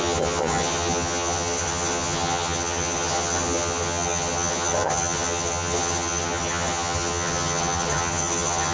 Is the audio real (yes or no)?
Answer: no